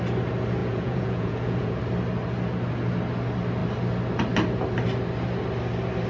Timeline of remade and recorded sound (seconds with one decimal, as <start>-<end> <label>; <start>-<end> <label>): 0.0-0.6 recorded; 0.6-1.8 remade; 1.8-6.1 recorded